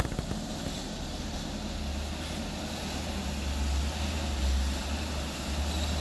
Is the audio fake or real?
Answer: real